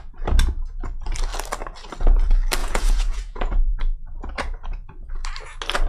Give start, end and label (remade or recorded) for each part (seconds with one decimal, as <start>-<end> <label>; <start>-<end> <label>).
0.0-2.6 recorded; 2.6-3.8 remade; 3.8-5.9 recorded

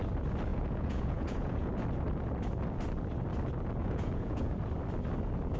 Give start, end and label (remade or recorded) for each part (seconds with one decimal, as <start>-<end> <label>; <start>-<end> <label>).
0.0-0.5 recorded; 0.5-1.7 remade; 1.7-3.8 recorded; 3.8-4.6 remade; 4.6-5.6 recorded

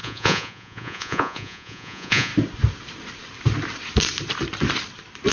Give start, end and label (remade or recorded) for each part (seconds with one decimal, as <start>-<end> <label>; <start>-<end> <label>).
0.0-2.3 remade; 2.3-5.3 recorded

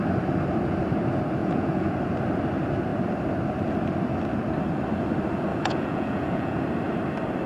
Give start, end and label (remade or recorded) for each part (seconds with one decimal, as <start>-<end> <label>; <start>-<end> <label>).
0.0-1.4 recorded; 1.4-1.9 remade; 1.9-5.5 recorded; 5.5-6.6 remade; 6.6-7.5 recorded

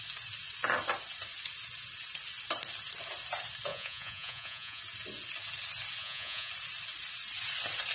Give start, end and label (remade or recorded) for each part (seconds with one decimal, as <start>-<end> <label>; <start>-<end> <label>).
0.0-3.7 recorded; 3.7-4.8 remade; 4.8-6.0 recorded; 6.0-6.5 remade; 6.5-7.9 recorded

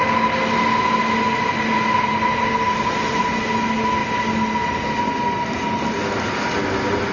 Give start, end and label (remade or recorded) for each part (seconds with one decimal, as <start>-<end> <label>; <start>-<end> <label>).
0.0-7.1 recorded

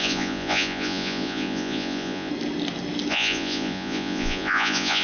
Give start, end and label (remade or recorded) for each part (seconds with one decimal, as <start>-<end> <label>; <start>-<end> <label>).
0.0-2.3 remade; 2.3-3.1 recorded; 3.1-5.0 remade